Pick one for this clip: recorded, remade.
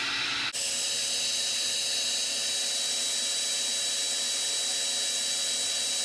recorded